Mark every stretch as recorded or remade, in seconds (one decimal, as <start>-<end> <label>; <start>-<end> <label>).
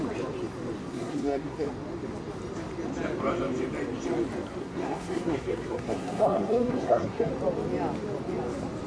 0.0-0.8 recorded; 0.8-1.7 remade; 1.7-4.6 recorded; 4.6-7.3 remade; 7.3-8.9 recorded